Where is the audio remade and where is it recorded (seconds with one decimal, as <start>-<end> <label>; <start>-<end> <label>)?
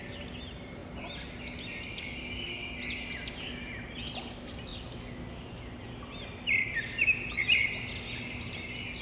0.0-9.0 recorded